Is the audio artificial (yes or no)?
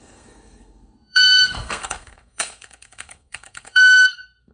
yes